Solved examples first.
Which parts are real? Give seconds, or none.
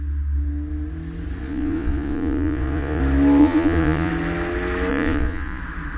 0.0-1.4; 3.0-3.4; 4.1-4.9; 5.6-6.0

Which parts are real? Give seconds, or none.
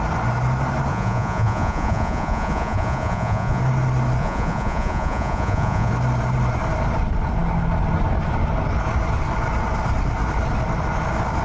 0.0-0.9; 3.6-4.2; 5.9-11.4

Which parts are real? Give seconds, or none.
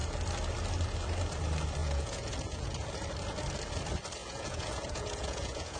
0.0-1.8; 2.9-4.2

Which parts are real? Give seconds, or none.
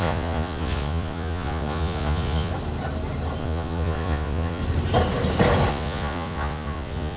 2.5-3.4; 4.6-5.7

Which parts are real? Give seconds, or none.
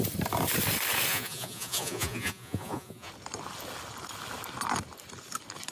0.0-1.1; 3.1-5.7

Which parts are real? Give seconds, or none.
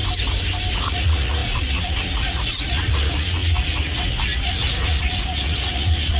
0.0-0.7